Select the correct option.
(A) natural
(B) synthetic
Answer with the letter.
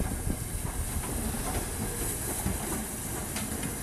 A